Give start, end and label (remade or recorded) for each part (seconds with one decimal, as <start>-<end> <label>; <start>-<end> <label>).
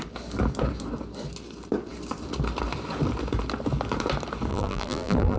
0.0-4.5 recorded; 4.5-5.4 remade